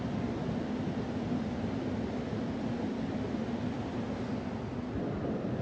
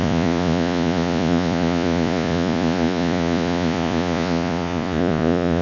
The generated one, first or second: second